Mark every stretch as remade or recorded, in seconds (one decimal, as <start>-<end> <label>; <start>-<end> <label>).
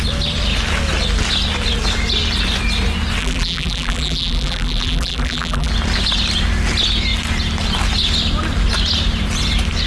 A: 0.0-3.2 recorded; 3.2-5.7 remade; 5.7-9.9 recorded